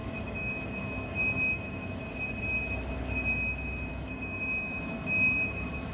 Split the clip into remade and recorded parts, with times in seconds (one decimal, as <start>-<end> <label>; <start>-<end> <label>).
0.0-2.0 remade; 2.0-3.9 recorded; 3.9-5.9 remade